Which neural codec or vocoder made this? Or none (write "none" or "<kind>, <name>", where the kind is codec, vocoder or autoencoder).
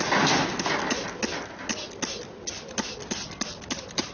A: none